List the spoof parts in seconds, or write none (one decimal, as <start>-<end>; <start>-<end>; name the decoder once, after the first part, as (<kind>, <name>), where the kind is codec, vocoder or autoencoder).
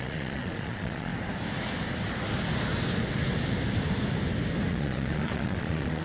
0.0-1.1 (vocoder, Vocos); 4.7-6.0